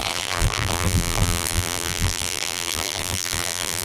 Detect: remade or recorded remade